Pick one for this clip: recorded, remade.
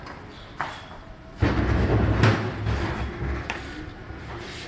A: recorded